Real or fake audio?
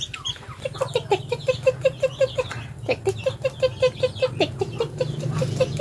real